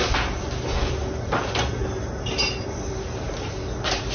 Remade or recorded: recorded